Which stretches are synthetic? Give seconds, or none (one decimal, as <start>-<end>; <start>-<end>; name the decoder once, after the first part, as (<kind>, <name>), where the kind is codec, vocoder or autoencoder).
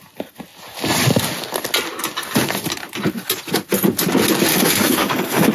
4.5-5.5 (codec, SNAC)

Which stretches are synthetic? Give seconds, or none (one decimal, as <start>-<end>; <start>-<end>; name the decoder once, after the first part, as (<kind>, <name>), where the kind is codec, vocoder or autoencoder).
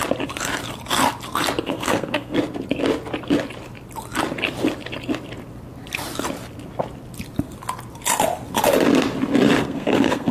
1.6-2.4 (codec, SNAC); 9.6-10.3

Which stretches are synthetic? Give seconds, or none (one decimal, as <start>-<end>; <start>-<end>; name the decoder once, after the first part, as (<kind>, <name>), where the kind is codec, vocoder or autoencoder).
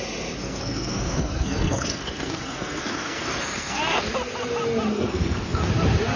0.4-3.8 (codec, SNAC); 4.9-5.7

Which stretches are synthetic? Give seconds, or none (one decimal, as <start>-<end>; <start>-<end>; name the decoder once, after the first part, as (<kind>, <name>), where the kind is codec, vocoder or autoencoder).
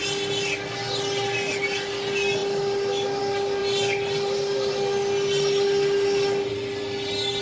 none